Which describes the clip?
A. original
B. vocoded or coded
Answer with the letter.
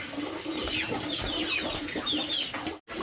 A